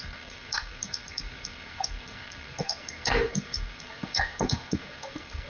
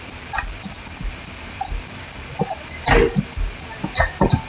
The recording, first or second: second